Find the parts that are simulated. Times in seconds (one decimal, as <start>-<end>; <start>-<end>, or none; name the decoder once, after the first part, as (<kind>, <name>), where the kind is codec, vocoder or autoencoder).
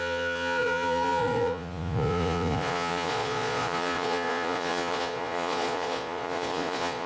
0.0-7.1 (vocoder, Vocos)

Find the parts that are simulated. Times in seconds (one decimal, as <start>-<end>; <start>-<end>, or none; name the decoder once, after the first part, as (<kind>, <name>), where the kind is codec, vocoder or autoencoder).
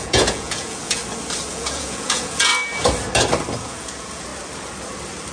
0.0-1.0 (vocoder, Vocos); 1.5-2.5; 3.6-4.3